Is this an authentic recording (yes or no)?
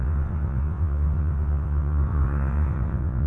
no